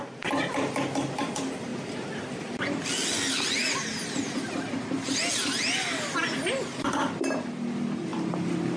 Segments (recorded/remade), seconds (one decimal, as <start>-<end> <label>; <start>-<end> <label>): 0.0-8.8 recorded